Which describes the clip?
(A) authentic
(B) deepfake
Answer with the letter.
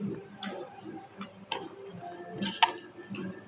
A